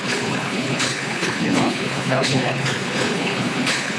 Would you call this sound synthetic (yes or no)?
yes